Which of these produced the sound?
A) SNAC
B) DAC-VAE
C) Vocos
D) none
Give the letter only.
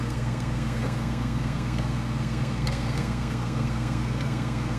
A